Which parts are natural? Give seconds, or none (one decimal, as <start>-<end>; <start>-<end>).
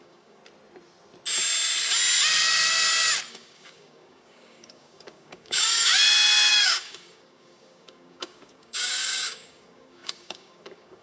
0.4-3.3; 5.9-6.5